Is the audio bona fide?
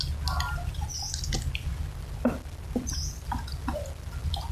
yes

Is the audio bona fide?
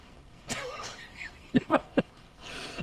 no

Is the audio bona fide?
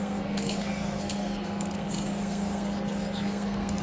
no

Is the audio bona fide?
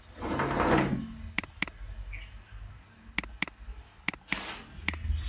yes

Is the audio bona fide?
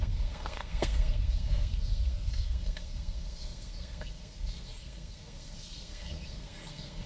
no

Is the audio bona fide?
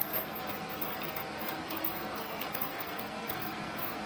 no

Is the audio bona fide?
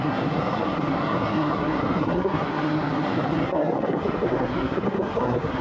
no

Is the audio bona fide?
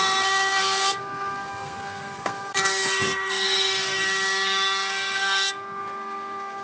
no